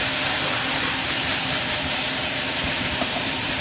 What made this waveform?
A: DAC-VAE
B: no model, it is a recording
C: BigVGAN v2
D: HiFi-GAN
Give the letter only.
C